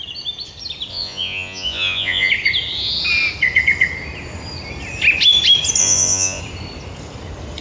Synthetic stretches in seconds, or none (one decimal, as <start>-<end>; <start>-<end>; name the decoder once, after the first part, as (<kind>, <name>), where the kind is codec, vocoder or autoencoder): 0.9-2.3 (vocoder, Vocos); 5.8-6.4